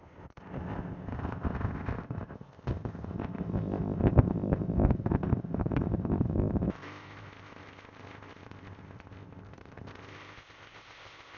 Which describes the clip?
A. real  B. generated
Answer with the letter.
B